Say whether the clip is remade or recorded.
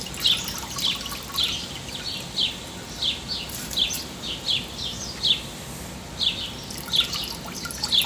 recorded